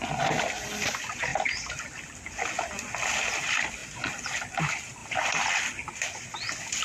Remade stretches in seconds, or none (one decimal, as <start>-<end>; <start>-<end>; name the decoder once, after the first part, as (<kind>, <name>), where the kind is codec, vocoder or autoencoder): 5.0-5.5 (vocoder, BigVGAN v2)